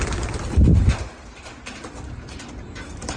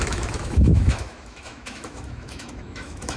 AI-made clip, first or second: second